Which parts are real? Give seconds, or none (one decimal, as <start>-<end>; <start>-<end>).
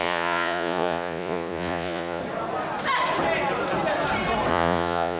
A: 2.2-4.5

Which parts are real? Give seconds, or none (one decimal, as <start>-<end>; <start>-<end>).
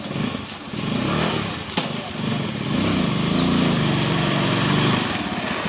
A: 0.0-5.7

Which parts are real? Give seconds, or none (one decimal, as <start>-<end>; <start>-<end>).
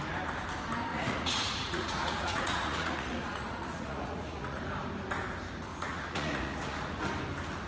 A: 0.0-0.9; 4.6-5.7; 7.0-7.7